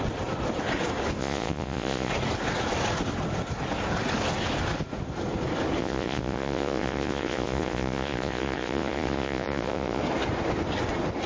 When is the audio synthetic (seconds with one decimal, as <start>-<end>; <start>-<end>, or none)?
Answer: 1.2-2.1; 5.8-10.0